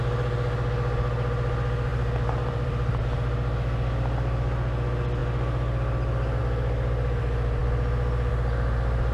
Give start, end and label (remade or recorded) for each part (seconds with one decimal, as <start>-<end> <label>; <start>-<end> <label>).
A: 0.0-1.9 recorded; 1.9-3.0 remade; 3.0-9.1 recorded